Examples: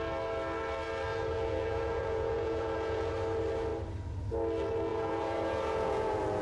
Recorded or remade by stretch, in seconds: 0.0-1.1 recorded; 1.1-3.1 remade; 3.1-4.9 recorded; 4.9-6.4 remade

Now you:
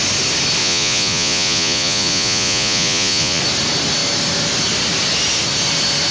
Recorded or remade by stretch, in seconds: 0.0-0.6 recorded; 0.6-3.4 remade; 3.4-6.1 recorded

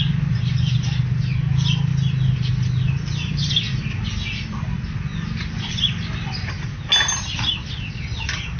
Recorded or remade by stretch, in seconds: 0.0-8.6 recorded

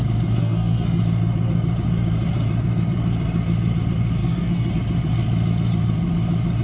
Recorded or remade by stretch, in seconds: 0.0-0.4 recorded; 0.4-1.0 remade; 1.0-4.2 recorded; 4.2-4.7 remade; 4.7-6.6 recorded

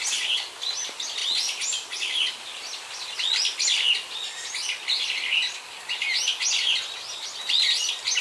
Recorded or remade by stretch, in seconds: 0.0-8.2 recorded

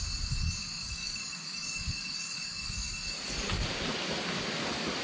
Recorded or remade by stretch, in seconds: 0.0-0.6 recorded; 0.6-3.6 remade; 3.6-5.0 recorded